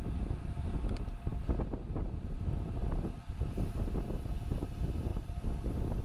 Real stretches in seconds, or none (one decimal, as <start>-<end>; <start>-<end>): 0.0-1.3; 2.2-2.8; 3.4-5.1; 5.6-6.0